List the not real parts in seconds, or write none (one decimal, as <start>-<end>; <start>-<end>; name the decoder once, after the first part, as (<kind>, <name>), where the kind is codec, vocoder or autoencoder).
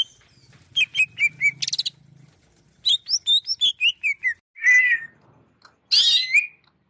none